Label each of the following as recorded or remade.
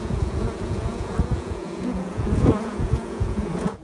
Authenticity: remade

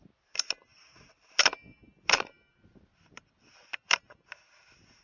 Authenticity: recorded